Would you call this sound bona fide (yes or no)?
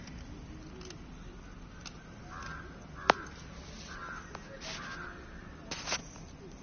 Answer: yes